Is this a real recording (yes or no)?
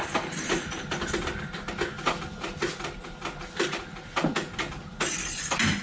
yes